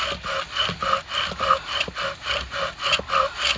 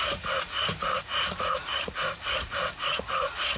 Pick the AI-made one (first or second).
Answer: second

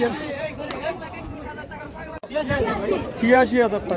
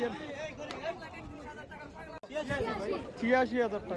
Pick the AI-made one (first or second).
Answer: first